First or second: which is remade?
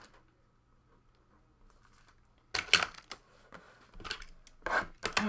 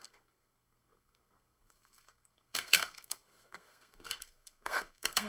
second